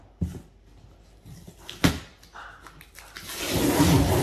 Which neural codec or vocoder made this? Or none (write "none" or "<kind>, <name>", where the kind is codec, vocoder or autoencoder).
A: none